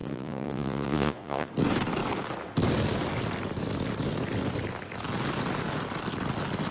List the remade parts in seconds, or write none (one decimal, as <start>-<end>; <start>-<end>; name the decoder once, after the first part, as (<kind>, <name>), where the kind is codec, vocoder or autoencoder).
0.0-1.5 (vocoder, Vocos)